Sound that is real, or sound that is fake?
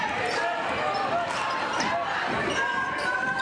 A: fake